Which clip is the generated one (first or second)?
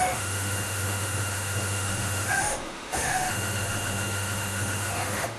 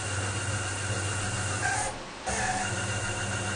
first